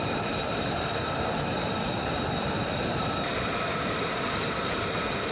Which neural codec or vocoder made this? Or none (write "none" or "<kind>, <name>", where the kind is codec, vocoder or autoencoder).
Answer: vocoder, BigVGAN v2